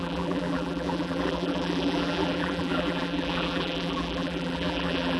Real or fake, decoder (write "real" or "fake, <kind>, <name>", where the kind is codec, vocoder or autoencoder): fake, vocoder, BigVGAN v2